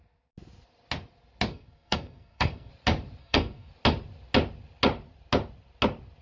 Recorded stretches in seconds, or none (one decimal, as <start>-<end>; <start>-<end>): 0.0-1.5; 2.7-3.2; 3.7-6.2